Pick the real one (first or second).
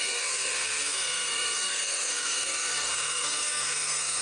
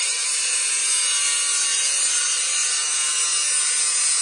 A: second